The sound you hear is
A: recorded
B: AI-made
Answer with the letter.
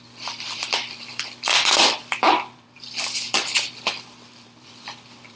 B